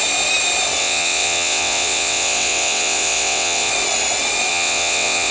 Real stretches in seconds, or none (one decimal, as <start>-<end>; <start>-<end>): 0.0-0.8; 3.7-4.5